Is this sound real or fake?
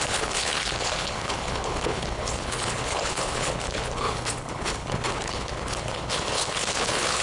fake